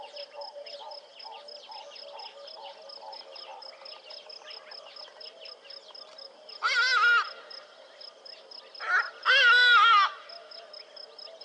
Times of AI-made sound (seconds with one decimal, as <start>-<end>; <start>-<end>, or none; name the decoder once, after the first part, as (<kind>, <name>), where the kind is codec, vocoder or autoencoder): none